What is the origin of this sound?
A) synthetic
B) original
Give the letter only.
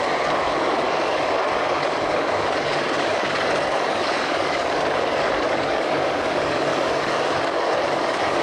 A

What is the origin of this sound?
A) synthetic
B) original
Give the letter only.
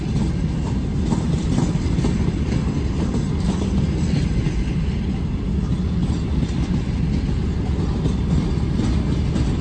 B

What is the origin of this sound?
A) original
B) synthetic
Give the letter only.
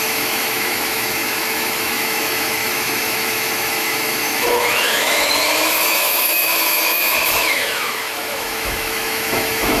B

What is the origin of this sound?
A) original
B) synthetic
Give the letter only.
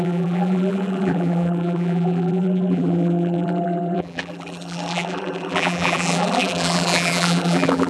B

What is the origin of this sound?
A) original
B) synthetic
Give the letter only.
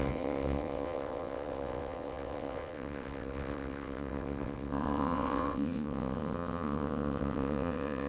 B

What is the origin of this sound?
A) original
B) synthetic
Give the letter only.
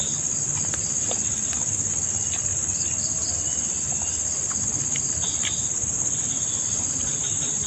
A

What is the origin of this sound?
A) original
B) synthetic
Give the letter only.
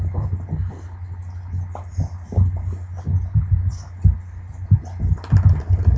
A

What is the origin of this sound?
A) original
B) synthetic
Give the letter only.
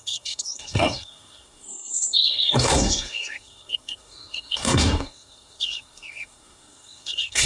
B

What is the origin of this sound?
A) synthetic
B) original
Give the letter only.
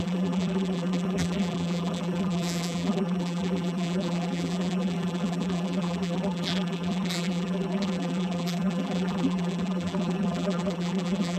A